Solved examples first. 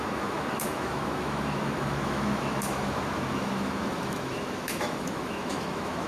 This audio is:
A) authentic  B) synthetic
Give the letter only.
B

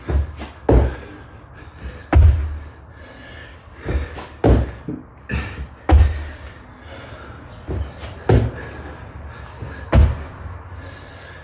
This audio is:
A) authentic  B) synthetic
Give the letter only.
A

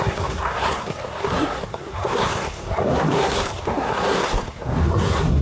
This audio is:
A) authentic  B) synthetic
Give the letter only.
B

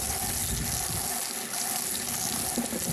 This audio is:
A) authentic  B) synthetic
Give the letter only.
A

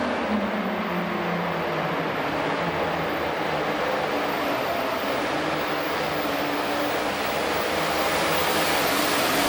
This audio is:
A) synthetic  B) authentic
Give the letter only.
B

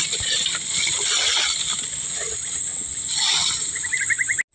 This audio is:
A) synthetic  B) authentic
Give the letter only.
B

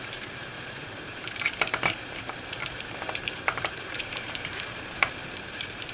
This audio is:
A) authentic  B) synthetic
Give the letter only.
B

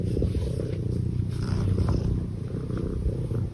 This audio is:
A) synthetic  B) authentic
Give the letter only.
B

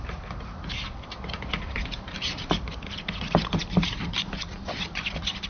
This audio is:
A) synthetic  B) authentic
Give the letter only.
B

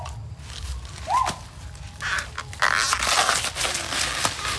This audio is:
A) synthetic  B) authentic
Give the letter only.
B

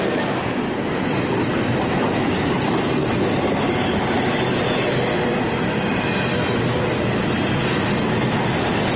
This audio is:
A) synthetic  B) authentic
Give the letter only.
B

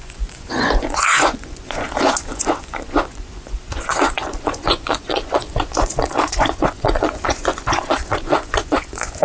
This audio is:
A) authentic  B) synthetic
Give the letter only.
B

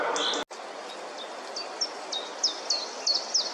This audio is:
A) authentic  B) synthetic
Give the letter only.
A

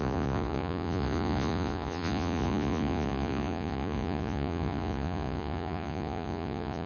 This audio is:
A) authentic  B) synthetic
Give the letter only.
B